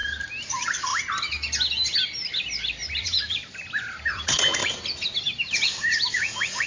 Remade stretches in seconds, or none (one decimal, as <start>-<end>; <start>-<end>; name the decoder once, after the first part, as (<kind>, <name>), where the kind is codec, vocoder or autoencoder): 0.5-0.9 (vocoder, Vocos); 3.0-3.4; 4.1-4.6; 6.1-6.7